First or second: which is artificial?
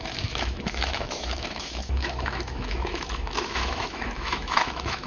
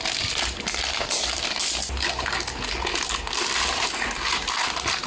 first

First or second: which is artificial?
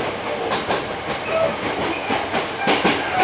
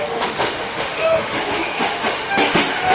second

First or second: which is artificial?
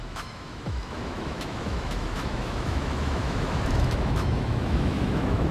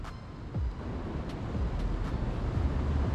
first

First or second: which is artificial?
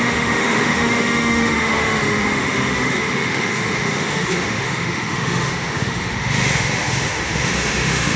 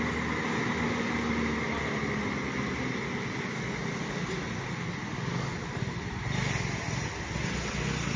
first